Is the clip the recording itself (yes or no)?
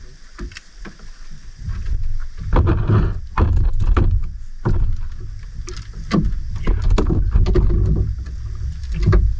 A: yes